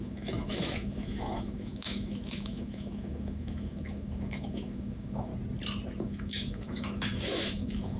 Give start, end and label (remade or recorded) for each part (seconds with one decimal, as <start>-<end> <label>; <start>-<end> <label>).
0.0-5.3 remade; 5.3-6.0 recorded; 6.0-8.0 remade